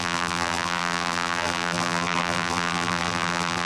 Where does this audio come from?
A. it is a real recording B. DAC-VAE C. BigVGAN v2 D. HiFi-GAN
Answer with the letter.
C